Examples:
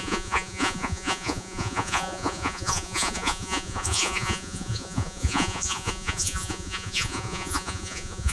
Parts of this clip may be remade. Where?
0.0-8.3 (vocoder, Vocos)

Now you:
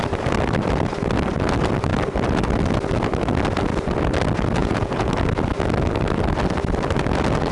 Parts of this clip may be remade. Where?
4.6-5.1 (vocoder, Vocos)

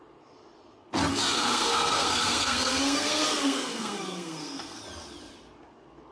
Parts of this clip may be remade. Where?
1.1-4.8 (codec, SNAC)

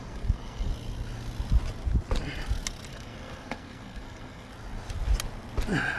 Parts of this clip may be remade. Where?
0.0-0.7 (codec, SNAC); 2.9-4.5